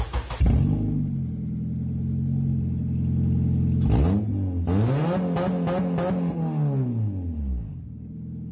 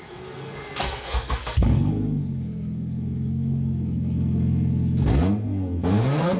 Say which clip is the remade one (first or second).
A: second